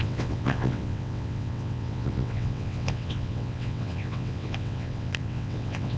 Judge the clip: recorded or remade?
remade